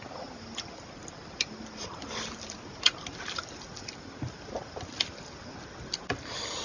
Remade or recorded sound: recorded